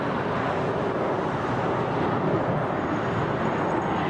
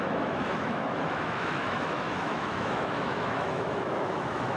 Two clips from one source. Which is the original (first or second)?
first